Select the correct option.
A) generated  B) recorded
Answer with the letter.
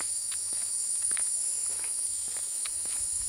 A